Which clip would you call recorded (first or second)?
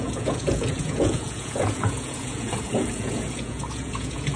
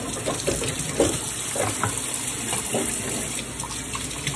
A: second